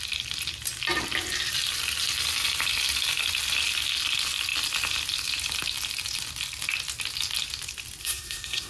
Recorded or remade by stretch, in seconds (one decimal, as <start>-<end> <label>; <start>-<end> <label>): 0.0-8.0 recorded; 8.0-8.7 remade